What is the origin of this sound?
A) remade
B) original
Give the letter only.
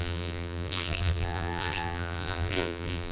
A